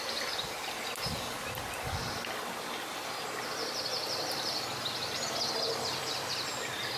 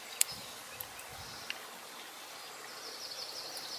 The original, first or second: first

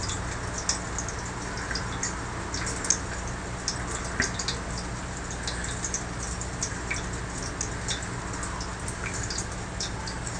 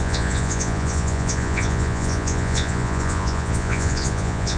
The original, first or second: first